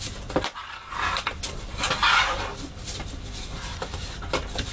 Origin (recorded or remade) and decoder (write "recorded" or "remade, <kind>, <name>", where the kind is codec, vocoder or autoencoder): remade, vocoder, BigVGAN v2